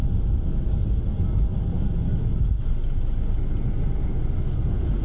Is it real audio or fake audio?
real